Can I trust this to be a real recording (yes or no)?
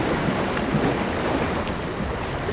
yes